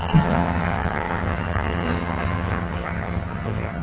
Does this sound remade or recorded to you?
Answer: remade